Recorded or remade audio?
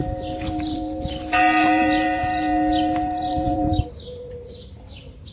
remade